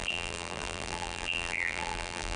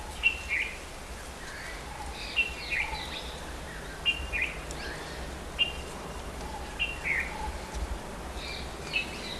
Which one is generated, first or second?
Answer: first